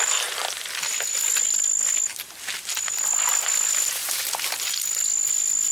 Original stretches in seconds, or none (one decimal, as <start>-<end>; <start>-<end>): 0.0-5.7